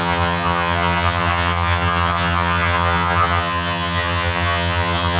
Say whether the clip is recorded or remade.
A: remade